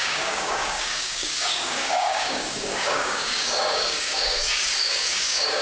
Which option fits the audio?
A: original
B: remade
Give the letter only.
B